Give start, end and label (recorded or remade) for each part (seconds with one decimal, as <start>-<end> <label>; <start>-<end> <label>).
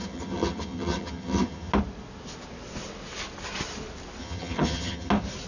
0.0-1.7 remade; 1.7-4.2 recorded; 4.2-5.1 remade; 5.1-5.5 recorded